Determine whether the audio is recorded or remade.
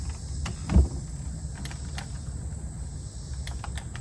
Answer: recorded